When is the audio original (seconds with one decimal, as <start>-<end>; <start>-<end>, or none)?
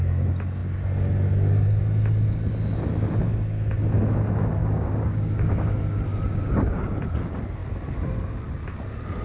0.0-4.6; 5.8-6.3; 6.9-9.2